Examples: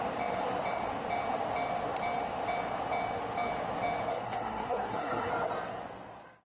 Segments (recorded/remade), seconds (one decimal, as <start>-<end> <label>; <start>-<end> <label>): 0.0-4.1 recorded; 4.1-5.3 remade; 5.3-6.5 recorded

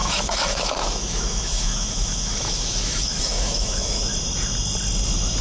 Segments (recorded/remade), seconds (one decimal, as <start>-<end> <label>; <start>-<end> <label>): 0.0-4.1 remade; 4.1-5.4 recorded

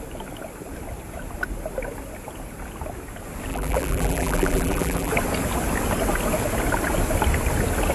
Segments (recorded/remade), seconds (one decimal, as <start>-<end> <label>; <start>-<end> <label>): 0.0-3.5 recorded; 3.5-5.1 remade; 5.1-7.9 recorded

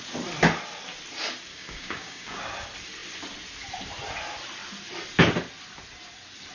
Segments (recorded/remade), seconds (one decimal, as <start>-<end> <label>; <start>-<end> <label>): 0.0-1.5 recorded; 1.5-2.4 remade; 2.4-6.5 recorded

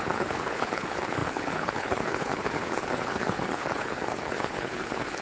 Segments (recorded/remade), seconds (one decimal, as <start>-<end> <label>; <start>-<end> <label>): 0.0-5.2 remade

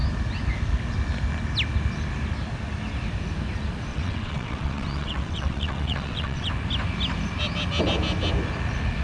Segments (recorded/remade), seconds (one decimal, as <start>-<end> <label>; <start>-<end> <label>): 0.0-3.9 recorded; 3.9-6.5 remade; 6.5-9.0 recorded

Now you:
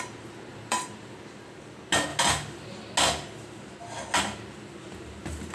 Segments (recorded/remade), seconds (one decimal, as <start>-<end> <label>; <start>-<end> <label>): 0.0-0.5 recorded; 0.5-1.1 remade; 1.1-5.5 recorded

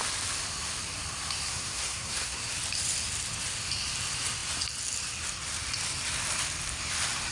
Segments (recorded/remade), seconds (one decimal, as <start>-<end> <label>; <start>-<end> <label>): 0.0-1.5 recorded; 1.5-2.4 remade; 2.4-7.3 recorded